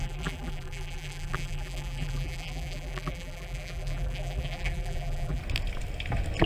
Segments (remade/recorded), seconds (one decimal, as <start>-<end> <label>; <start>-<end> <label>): 0.0-5.4 remade; 5.4-6.5 recorded